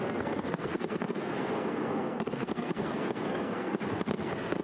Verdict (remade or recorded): remade